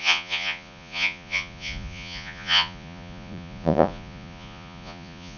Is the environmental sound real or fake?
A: fake